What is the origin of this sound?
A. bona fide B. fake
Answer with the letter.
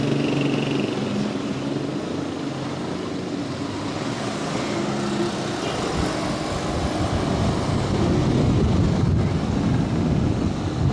A